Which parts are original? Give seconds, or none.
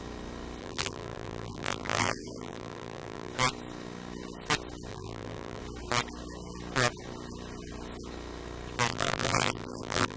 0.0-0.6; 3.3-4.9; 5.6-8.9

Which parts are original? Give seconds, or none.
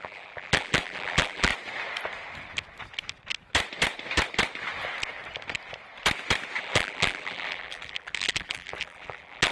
1.5-6.6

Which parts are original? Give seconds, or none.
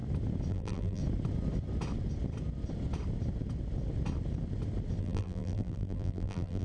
0.0-0.5; 1.0-5.0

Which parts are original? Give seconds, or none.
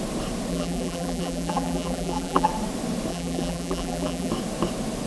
0.0-0.5; 2.5-3.1; 4.3-5.1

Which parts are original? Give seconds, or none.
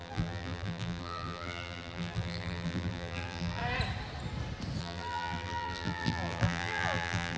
3.6-4.8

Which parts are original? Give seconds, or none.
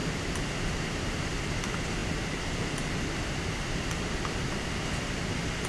none